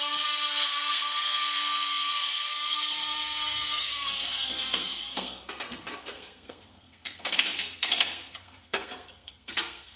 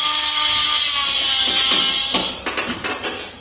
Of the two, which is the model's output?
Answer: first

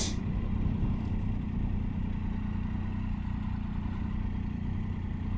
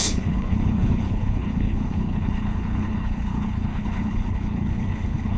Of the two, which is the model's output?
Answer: second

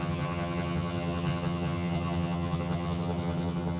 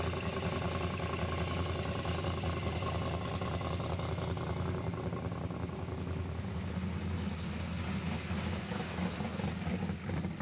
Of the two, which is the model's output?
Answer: first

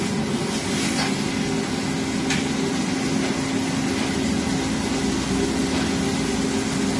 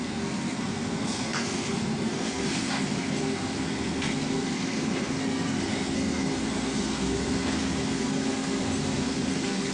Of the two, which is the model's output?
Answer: second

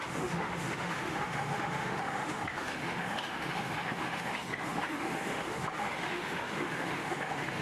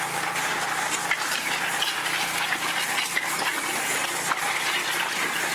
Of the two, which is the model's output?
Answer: first